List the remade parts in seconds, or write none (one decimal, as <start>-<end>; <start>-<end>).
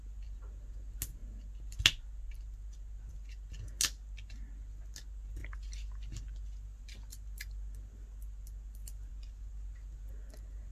none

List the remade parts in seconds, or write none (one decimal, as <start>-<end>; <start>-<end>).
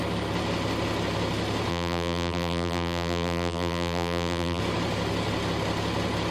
1.7-4.6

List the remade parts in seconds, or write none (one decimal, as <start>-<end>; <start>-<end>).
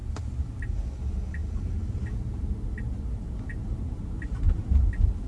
1.4-2.0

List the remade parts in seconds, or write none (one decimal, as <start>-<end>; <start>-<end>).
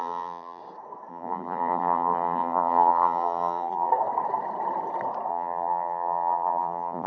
0.0-0.6; 1.1-3.9; 5.3-7.1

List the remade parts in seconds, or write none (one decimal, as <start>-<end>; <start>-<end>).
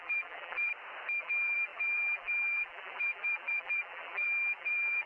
0.0-0.7; 1.2-5.1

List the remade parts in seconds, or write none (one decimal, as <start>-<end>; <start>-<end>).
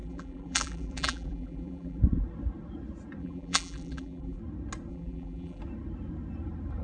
0.0-2.0; 3.2-4.4; 4.9-5.6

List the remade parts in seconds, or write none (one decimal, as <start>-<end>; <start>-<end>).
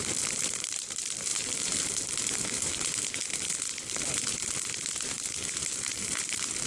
0.0-1.3; 5.1-6.7